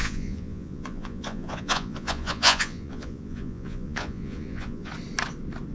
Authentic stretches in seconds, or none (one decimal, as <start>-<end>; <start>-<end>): 4.9-5.7